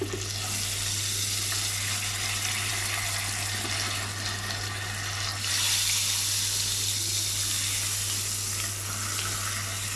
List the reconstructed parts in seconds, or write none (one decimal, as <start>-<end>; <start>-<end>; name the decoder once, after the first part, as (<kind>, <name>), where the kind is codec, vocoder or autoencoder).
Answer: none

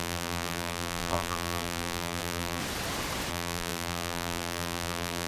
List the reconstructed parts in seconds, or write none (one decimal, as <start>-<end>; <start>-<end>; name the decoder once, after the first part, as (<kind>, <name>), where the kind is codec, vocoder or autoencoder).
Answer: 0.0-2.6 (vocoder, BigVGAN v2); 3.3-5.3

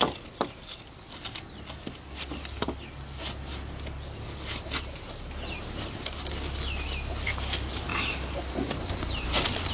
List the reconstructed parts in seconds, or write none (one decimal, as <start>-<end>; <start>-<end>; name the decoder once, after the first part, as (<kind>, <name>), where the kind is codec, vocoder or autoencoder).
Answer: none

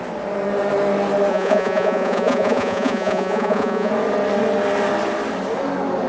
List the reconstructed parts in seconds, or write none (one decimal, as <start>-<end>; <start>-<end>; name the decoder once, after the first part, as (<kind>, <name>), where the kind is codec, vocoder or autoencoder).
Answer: 1.3-3.9 (vocoder, Vocos)

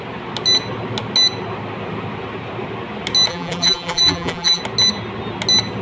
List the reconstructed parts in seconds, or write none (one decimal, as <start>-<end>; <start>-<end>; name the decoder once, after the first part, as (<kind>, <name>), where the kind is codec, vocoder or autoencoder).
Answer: 3.3-4.6 (vocoder, BigVGAN v2)

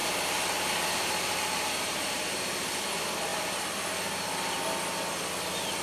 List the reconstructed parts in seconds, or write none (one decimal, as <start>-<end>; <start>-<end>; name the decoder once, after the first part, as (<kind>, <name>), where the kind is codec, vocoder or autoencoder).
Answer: 0.0-2.8 (vocoder, BigVGAN v2)